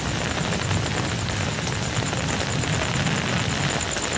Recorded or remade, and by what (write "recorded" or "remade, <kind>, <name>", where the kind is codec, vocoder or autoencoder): recorded